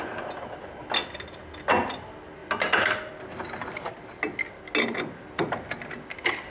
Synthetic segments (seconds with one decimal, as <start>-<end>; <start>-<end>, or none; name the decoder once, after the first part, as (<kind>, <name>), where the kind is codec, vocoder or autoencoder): none